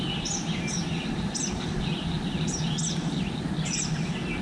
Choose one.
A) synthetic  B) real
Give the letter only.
B